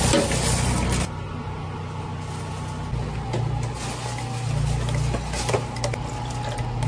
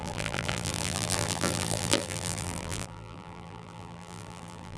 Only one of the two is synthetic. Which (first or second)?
second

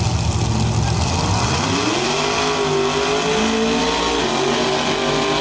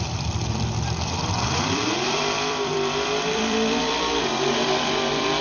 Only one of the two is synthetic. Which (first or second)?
second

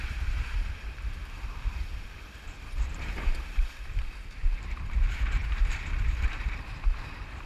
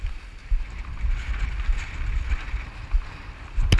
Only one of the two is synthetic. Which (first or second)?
first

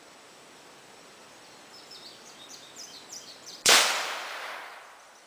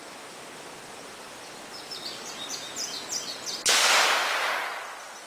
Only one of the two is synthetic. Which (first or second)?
first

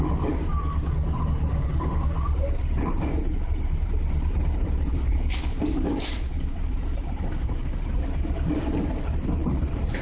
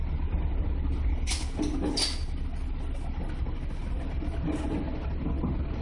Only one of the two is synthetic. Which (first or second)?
first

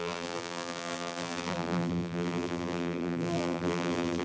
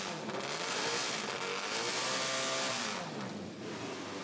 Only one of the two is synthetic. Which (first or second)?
first